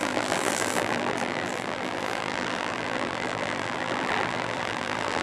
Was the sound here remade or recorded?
remade